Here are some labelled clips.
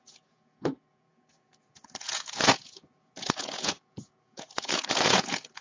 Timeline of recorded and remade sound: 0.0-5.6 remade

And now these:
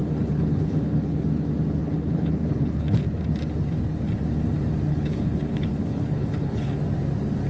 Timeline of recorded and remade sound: 0.0-1.2 remade; 1.2-1.8 recorded; 1.8-3.0 remade; 3.0-4.9 recorded; 4.9-6.7 remade; 6.7-7.5 recorded